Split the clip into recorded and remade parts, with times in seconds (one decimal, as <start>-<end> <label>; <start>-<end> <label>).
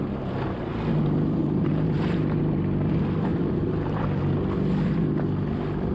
0.0-1.4 recorded; 1.4-2.4 remade; 2.4-3.3 recorded; 3.3-4.2 remade; 4.2-5.9 recorded